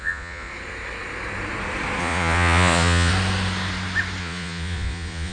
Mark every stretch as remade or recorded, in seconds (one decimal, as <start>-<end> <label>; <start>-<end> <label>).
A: 0.0-0.5 remade; 0.5-2.0 recorded; 2.0-3.1 remade; 3.1-4.2 recorded; 4.2-5.3 remade